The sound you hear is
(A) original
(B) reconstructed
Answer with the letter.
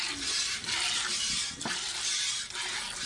A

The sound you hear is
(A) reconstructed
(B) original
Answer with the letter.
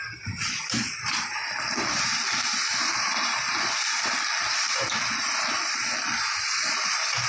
B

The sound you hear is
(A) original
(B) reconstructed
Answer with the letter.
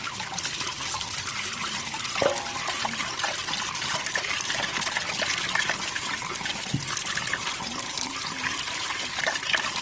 A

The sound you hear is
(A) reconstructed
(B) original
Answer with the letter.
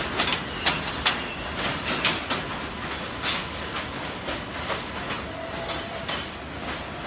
B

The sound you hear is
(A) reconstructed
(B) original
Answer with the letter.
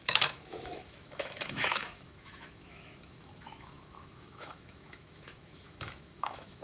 A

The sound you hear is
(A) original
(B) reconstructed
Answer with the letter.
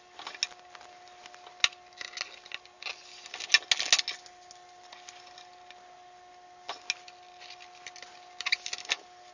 A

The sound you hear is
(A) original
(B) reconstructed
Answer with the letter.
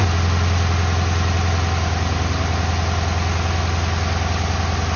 A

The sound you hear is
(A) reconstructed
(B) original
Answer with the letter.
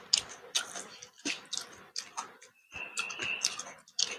B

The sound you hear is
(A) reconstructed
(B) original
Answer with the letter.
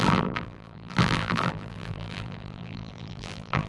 A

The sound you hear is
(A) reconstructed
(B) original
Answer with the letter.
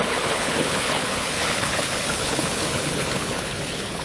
A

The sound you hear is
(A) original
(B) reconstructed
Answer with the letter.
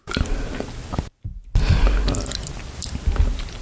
A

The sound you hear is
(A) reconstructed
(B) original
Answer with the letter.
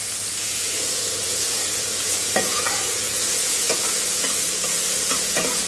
A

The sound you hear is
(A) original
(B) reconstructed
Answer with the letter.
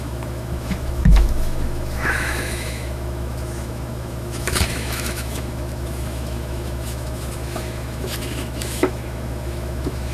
B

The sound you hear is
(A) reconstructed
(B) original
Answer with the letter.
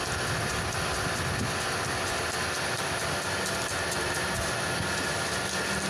B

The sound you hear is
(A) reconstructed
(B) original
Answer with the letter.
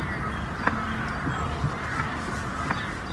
B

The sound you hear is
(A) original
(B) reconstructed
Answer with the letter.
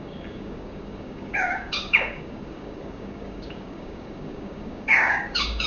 B